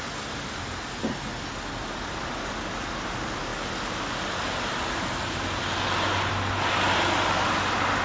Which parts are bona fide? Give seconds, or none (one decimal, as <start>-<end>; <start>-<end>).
0.0-8.0